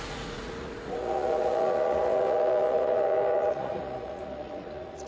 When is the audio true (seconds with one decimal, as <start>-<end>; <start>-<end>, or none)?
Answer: none